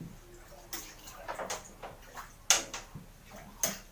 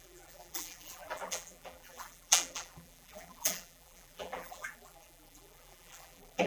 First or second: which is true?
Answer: first